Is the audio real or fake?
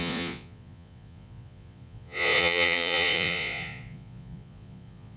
fake